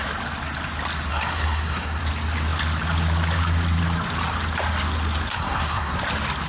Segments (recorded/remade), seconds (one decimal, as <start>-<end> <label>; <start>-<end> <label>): 0.0-1.1 recorded; 1.1-2.0 remade; 2.0-5.3 recorded; 5.3-6.0 remade; 6.0-6.5 recorded